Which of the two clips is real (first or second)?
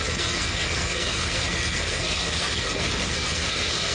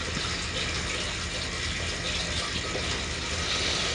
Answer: second